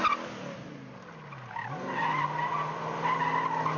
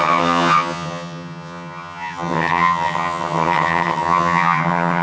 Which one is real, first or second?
first